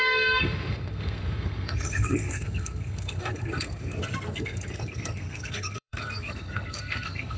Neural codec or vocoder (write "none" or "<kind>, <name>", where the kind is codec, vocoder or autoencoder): codec, SNAC